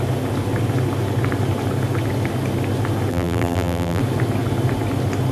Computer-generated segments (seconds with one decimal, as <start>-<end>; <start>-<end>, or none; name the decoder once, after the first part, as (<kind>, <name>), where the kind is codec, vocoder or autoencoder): 3.1-4.0 (vocoder, BigVGAN v2)